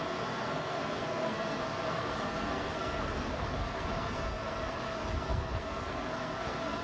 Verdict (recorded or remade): remade